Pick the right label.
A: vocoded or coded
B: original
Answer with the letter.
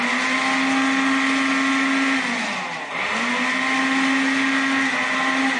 B